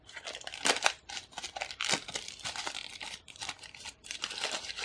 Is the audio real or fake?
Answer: fake